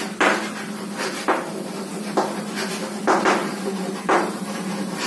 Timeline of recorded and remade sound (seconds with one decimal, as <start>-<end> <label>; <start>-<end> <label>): 0.0-3.4 recorded; 3.4-5.1 remade